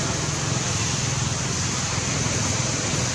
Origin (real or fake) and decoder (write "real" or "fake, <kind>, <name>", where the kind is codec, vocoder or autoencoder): real